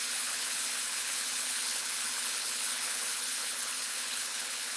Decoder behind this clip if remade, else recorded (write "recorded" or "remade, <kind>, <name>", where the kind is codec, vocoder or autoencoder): remade, codec, HILCodec